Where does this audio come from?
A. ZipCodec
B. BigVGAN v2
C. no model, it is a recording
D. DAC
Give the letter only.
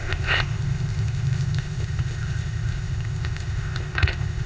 A